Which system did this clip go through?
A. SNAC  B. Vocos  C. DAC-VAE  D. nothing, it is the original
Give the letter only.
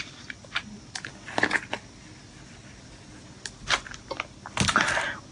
D